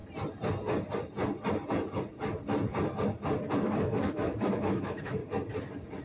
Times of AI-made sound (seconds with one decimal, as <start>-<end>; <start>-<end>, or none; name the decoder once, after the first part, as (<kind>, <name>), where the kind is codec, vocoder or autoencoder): 3.6-5.2 (autoencoder, DAC-VAE)